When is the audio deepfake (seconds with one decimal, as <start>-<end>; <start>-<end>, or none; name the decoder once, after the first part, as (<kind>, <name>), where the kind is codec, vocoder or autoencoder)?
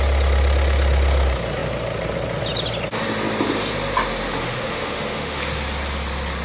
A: 4.4-5.4 (autoencoder, DAC-VAE)